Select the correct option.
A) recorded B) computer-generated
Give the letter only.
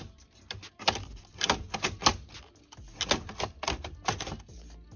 A